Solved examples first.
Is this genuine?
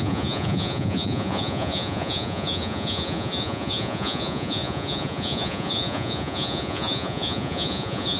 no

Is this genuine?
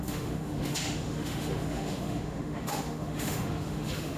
no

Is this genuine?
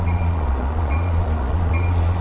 no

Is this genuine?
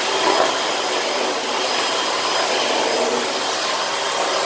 yes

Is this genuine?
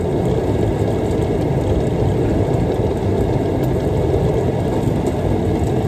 yes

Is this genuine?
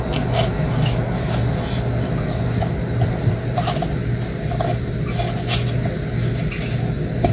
yes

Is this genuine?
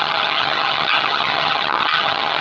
no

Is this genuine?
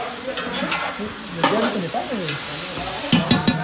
yes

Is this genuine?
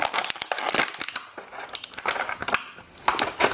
yes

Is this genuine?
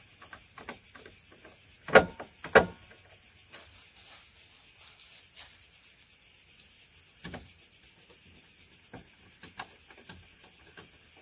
yes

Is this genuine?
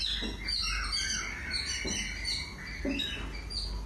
yes